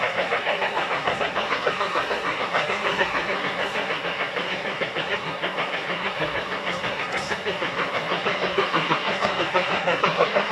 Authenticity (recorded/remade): remade